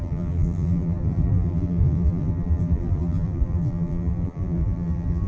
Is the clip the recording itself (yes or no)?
no